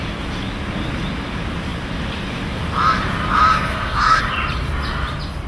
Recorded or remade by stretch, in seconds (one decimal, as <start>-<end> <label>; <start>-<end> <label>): 0.0-3.5 recorded; 3.5-4.2 remade; 4.2-5.5 recorded